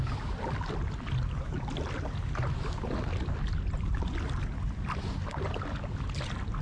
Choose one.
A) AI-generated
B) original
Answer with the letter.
B